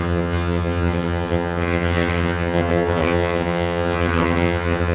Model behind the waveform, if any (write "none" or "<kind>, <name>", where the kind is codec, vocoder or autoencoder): vocoder, HiFi-GAN